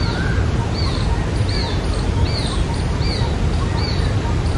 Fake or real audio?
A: real